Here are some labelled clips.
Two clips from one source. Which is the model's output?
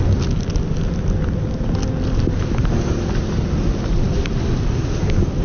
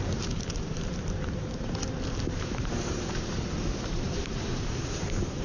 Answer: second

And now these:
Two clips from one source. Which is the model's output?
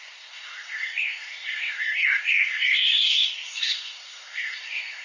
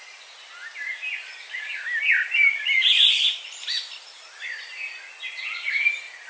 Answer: first